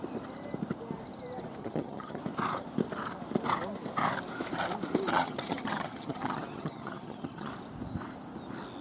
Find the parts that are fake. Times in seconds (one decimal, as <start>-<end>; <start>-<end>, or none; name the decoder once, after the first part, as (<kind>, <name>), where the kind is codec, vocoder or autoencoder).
1.6-2.2 (vocoder, HiFi-GAN); 5.1-7.5